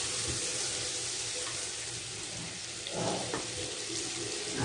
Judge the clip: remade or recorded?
remade